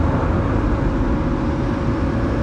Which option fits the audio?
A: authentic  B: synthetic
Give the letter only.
A